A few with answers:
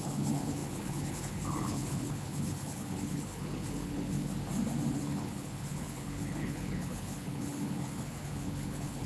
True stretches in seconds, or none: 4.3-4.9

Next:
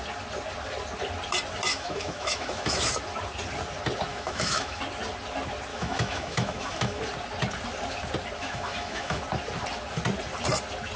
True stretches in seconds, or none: 0.0-1.7; 2.9-4.1; 4.8-5.7; 7.0-8.4; 9.2-11.0

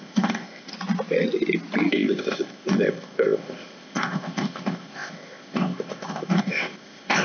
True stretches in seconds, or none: 0.7-1.9